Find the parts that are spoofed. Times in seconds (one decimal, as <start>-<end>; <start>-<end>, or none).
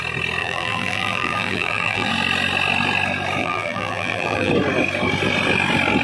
0.4-2.1; 3.4-4.5